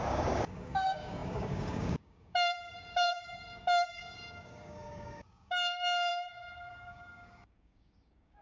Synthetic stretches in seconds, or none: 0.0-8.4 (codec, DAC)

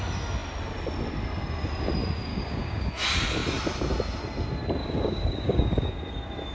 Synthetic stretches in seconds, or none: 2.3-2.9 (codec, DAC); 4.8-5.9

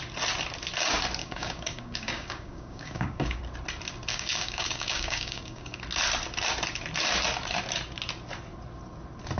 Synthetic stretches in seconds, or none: 1.2-3.4 (codec, DAC); 4.1-5.8

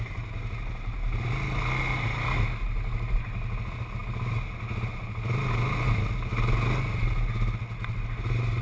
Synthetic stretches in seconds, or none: none